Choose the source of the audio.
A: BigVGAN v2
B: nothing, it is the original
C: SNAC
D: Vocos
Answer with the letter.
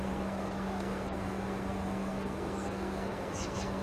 C